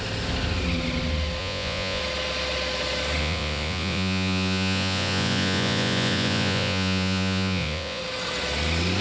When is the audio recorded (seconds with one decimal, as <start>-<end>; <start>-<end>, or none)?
0.0-1.4; 2.0-3.2; 8.0-9.0